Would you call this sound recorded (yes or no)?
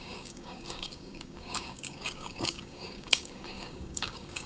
no